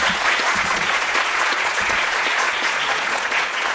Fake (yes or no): yes